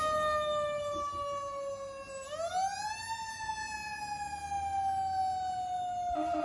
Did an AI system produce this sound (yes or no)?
no